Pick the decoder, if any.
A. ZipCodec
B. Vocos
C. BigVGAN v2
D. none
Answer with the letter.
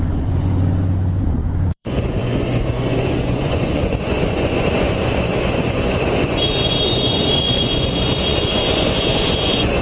B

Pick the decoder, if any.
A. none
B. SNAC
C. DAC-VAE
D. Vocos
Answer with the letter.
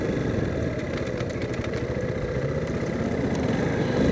A